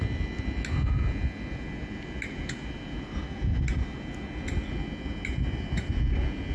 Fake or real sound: real